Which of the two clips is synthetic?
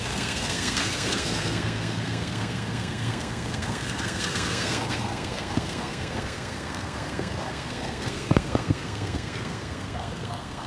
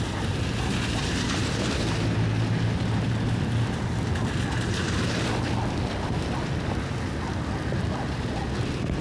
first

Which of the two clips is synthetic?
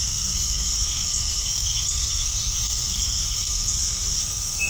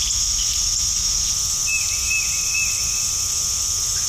first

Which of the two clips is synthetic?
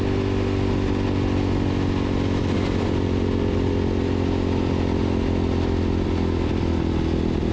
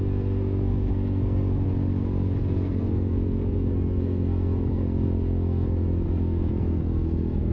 second